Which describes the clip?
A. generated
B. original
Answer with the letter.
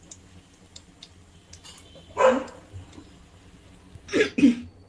B